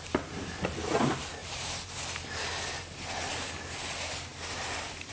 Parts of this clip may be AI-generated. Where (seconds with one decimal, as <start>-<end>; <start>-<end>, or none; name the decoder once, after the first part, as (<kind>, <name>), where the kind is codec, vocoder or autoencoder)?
1.4-2.0 (vocoder, BigVGAN v2); 4.3-5.1